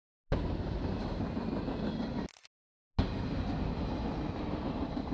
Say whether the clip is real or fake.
real